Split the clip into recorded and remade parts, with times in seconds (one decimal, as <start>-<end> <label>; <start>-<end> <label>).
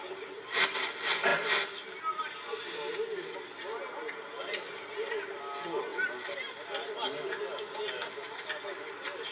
0.0-9.3 recorded